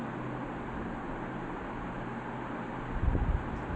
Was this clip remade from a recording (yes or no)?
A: no